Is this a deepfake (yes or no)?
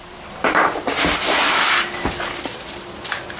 yes